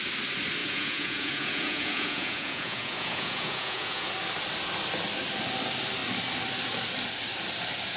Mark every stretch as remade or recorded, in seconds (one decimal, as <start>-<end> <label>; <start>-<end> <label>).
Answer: 0.0-0.6 recorded; 0.6-4.1 remade; 4.1-8.0 recorded